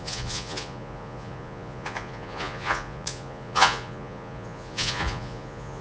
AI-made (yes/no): yes